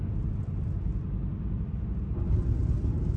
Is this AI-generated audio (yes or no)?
no